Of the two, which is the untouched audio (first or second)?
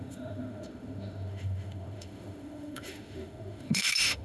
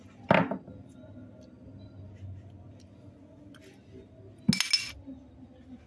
second